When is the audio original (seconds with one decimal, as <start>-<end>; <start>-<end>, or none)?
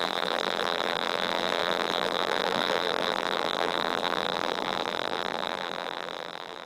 none